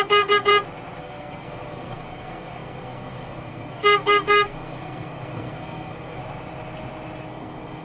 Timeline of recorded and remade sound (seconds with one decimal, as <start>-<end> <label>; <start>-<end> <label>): 0.0-0.5 remade; 0.5-1.0 recorded; 1.0-6.2 remade; 6.2-7.3 recorded; 7.3-7.8 remade